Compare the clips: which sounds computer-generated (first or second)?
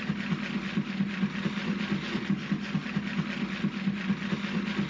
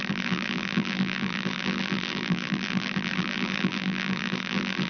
second